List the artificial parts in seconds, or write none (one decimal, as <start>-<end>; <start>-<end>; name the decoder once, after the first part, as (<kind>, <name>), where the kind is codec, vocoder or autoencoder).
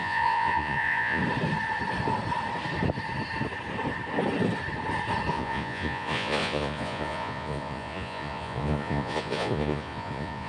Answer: 0.0-1.2 (vocoder, Vocos); 5.3-10.5